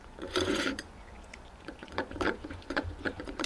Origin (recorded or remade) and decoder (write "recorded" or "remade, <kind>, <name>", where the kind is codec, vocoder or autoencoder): remade, vocoder, Vocos